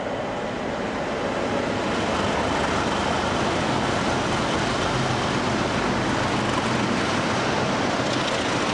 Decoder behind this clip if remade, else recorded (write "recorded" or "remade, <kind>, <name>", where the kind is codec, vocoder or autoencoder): recorded